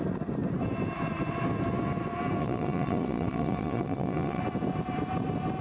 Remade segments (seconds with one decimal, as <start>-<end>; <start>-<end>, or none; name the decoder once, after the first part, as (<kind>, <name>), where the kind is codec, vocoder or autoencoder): 2.4-4.4 (vocoder, Vocos)